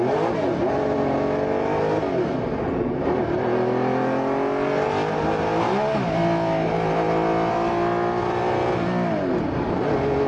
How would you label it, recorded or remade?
recorded